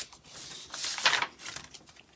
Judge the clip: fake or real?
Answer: real